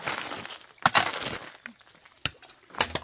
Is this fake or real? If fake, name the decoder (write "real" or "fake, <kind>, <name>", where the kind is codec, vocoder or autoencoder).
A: real